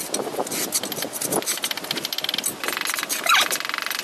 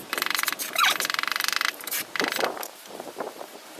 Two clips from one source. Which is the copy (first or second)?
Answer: second